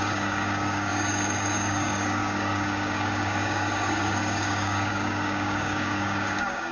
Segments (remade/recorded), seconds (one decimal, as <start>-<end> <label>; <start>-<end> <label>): 0.0-6.7 remade